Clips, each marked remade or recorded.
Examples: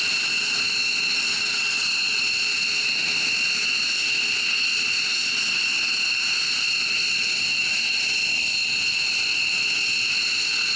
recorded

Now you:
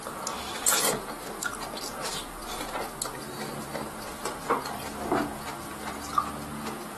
recorded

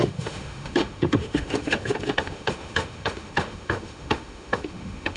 remade